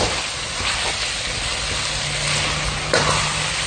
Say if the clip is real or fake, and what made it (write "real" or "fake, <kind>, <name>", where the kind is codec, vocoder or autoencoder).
real